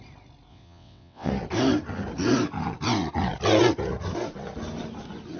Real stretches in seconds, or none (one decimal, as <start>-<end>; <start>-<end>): 0.0-0.5; 1.3-5.4